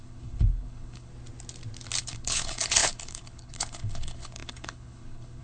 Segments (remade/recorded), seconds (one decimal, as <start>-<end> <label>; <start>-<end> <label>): 0.0-1.1 remade; 1.1-2.0 recorded; 2.0-5.4 remade